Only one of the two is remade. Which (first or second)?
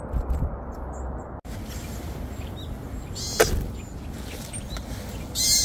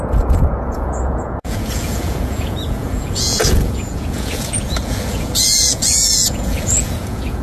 second